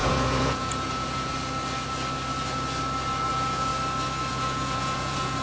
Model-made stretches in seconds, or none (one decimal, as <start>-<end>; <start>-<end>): 0.0-1.3; 3.3-3.7; 4.3-5.4